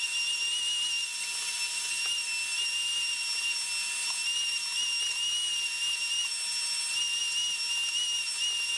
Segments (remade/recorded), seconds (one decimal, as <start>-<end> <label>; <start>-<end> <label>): 0.0-8.8 recorded